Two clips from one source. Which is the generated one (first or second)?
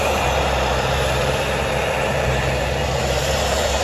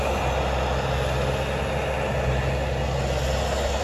first